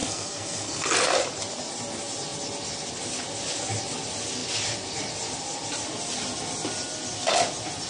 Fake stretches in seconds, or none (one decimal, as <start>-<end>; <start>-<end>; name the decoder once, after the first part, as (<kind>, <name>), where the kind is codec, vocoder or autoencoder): 0.0-0.9 (codec, SNAC)